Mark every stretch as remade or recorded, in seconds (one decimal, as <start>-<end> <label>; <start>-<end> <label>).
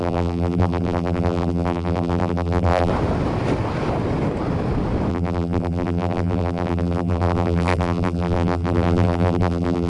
0.0-2.9 remade; 2.9-5.1 recorded; 5.1-9.9 remade